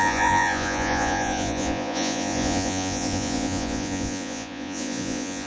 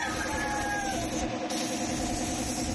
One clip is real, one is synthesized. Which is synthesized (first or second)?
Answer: first